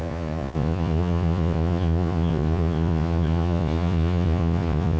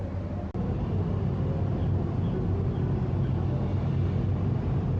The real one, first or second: second